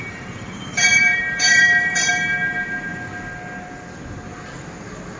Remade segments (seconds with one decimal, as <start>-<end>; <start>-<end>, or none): 0.0-2.1